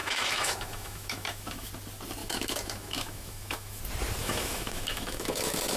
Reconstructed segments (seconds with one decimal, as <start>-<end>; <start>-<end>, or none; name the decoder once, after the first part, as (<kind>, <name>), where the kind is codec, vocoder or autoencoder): 0.0-1.7 (autoencoder, DAC-VAE); 2.2-3.8; 4.2-5.8

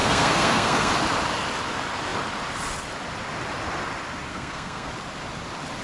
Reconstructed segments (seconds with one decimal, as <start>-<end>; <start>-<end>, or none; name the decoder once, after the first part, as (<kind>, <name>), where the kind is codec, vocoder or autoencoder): 0.0-0.9 (codec, SNAC); 4.3-4.9